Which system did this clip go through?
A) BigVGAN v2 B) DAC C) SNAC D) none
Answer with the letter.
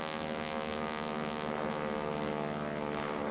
D